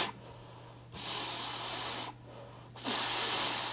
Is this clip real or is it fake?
real